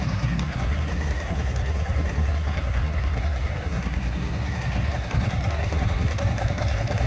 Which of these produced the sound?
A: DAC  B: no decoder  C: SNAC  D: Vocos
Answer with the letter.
C